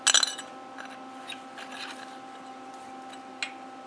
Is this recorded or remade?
recorded